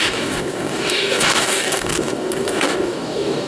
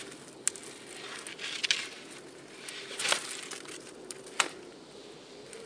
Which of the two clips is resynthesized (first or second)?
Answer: first